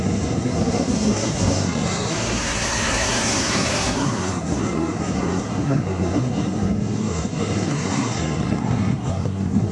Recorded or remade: remade